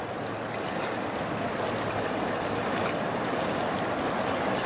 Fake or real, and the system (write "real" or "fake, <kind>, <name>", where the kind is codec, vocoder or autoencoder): real